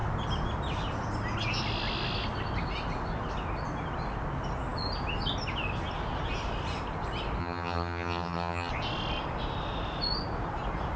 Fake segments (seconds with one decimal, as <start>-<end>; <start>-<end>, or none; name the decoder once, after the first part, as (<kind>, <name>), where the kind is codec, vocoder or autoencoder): 7.4-8.7 (vocoder, HiFi-GAN)